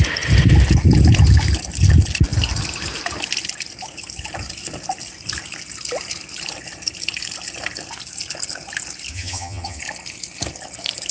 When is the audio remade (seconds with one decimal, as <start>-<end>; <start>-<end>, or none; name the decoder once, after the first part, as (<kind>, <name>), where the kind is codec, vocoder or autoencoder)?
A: 9.1-9.8 (vocoder, HiFi-GAN)